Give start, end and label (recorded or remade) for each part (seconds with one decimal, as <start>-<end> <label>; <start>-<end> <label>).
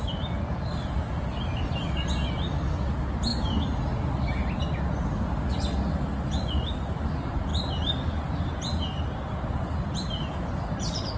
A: 0.0-11.2 recorded